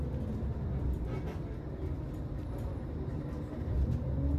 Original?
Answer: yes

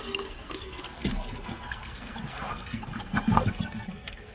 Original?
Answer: no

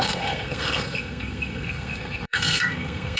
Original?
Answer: no